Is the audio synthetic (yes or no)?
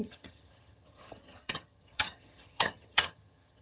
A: yes